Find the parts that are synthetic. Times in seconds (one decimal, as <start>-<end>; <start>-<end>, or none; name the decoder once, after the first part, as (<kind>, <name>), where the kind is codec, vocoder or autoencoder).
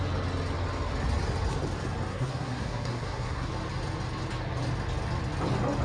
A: 2.1-3.5 (codec, SNAC)